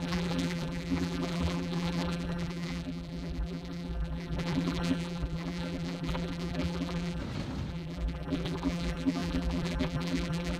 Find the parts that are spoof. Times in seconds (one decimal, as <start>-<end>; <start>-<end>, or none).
0.0-7.2; 7.7-10.6